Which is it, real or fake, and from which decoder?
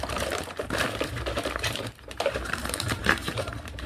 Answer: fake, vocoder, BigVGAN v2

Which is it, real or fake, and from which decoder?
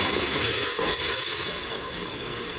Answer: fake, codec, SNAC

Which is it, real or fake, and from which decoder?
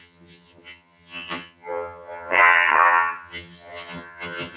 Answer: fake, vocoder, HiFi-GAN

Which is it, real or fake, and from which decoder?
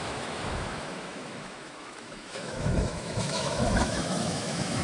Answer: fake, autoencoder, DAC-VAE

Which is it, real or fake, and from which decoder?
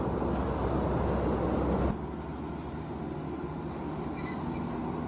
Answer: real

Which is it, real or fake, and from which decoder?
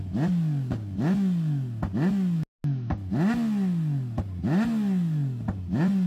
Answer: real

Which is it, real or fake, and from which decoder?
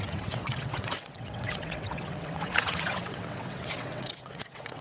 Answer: fake, vocoder, WaveNeXt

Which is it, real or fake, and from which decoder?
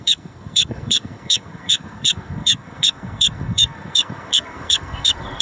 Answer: fake, codec, SNAC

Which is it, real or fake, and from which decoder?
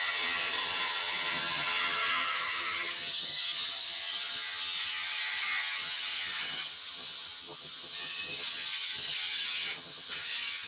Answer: fake, vocoder, HiFi-GAN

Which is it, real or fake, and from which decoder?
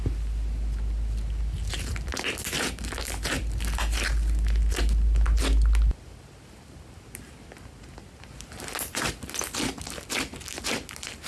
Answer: real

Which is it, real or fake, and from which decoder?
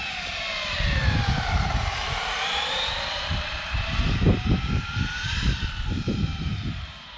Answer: fake, vocoder, BigVGAN v2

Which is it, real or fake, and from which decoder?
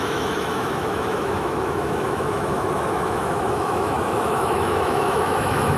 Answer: fake, autoencoder, DAC-VAE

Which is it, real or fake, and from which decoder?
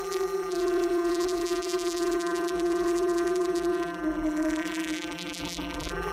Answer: fake, vocoder, BigVGAN v2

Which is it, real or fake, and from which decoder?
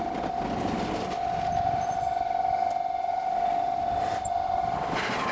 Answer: real